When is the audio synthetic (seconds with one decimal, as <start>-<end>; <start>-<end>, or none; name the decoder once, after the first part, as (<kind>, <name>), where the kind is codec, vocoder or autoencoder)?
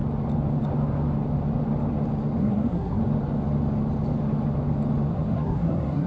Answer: 2.4-3.0 (codec, SNAC); 5.1-6.1